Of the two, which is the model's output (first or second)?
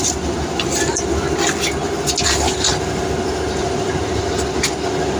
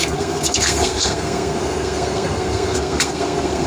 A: second